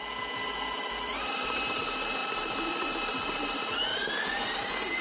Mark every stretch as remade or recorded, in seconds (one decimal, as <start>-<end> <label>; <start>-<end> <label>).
0.0-0.4 recorded; 0.4-1.8 remade; 1.8-3.9 recorded; 3.9-5.0 remade